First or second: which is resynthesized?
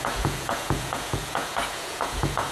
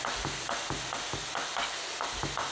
first